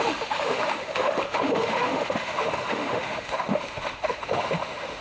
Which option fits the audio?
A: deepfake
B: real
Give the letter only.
A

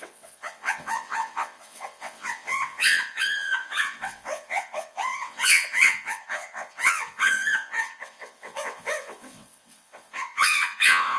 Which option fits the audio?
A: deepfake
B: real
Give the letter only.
A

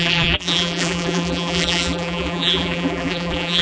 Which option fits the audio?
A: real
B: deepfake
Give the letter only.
B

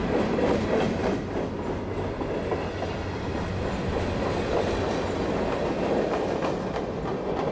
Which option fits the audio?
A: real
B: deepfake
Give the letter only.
A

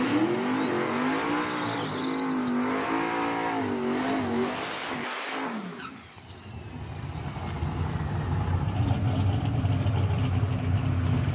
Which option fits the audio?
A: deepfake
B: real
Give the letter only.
B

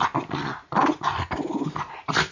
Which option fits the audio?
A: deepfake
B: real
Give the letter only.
B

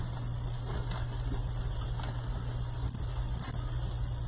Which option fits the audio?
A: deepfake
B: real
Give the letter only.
A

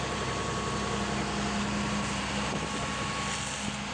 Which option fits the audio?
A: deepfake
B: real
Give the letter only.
B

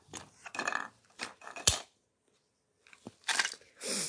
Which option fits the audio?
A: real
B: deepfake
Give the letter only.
A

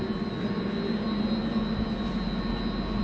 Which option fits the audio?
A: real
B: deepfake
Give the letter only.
A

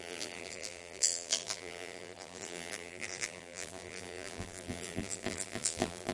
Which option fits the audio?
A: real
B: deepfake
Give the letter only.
B